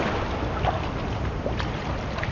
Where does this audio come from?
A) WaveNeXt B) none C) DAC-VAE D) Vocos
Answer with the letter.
B